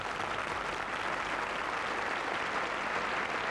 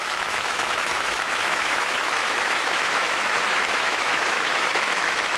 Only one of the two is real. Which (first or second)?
first